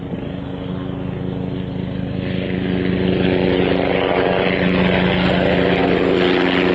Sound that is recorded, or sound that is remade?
recorded